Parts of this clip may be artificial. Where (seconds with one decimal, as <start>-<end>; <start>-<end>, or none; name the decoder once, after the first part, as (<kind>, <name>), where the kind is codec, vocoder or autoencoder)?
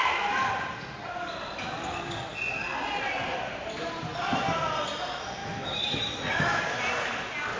5.4-6.6 (autoencoder, DAC-VAE)